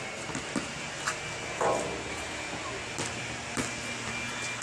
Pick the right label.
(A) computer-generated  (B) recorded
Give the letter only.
B